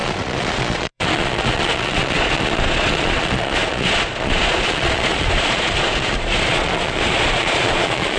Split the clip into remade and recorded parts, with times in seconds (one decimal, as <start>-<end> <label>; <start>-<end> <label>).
0.0-8.2 remade